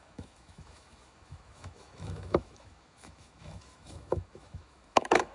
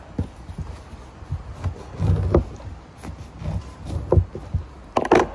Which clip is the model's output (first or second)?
first